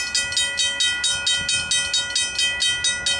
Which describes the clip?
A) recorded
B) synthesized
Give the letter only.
A